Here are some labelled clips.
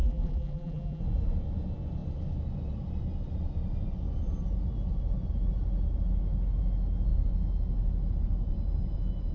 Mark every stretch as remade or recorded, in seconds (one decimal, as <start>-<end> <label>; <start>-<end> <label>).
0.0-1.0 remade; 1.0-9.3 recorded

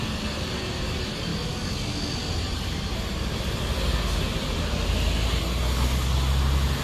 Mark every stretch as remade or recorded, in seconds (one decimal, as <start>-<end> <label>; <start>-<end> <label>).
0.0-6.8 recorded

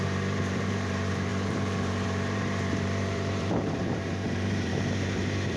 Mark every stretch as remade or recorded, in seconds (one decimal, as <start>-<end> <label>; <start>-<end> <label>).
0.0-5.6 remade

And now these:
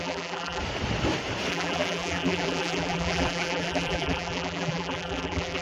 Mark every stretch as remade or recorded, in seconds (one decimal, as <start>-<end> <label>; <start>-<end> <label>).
0.0-0.6 remade; 0.6-1.5 recorded; 1.5-5.6 remade